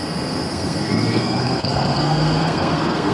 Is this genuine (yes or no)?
no